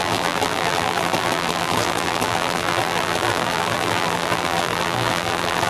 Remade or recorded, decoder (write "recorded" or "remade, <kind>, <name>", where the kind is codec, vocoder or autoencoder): remade, vocoder, BigVGAN v2